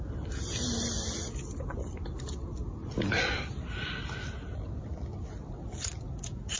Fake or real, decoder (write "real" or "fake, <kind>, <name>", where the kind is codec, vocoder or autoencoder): real